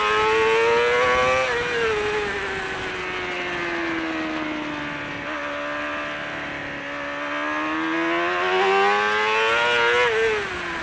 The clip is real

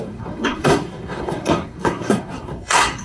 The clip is fake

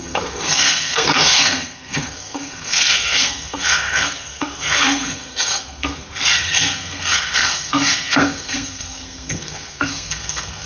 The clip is fake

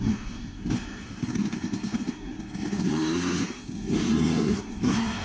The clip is fake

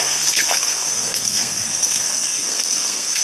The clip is fake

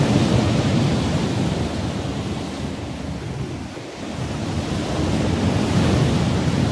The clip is real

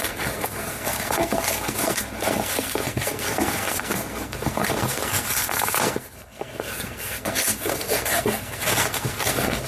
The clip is fake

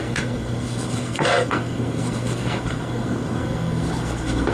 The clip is fake